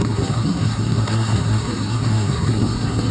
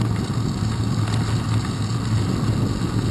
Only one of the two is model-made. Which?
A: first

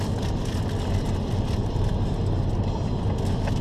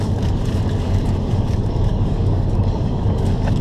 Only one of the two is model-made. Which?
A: second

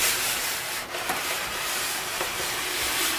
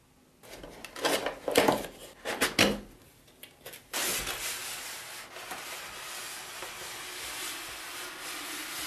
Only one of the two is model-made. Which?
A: first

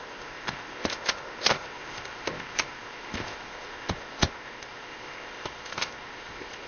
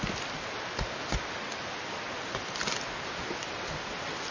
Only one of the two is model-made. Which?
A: first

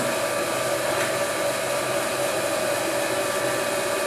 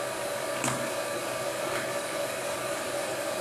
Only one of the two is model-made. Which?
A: second